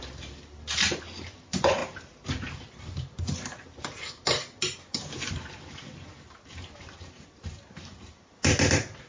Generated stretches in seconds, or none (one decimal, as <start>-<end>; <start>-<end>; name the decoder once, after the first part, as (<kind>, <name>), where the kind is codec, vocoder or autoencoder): none